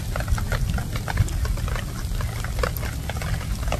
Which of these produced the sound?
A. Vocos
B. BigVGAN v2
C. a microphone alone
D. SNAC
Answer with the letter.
C